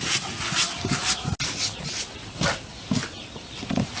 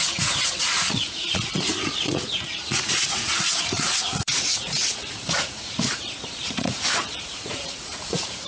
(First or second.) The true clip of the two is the first